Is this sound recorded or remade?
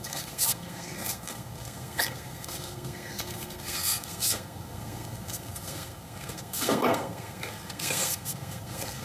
remade